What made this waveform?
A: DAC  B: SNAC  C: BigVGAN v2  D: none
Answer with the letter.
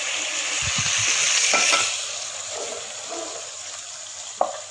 C